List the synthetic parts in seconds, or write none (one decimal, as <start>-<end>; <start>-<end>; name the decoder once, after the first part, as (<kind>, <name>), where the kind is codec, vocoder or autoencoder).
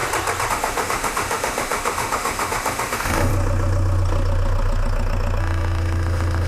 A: 0.5-3.3 (autoencoder, DAC-VAE); 5.4-6.5